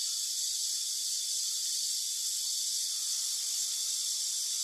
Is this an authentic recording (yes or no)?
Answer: yes